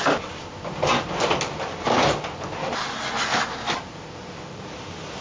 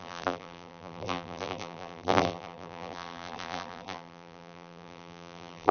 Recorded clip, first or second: first